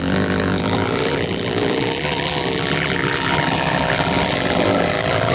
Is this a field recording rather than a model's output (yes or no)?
no